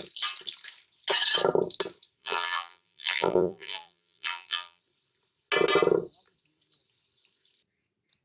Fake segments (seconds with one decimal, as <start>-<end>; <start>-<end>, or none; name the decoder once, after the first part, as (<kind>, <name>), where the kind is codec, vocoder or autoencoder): 2.2-4.8 (vocoder, BigVGAN v2)